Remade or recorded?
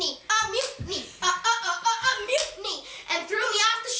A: recorded